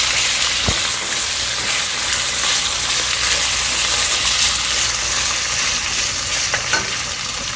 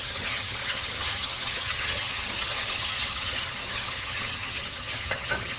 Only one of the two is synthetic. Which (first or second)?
second